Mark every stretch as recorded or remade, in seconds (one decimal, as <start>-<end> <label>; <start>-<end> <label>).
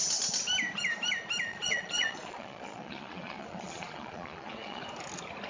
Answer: 0.0-1.5 recorded; 1.5-4.8 remade; 4.8-5.5 recorded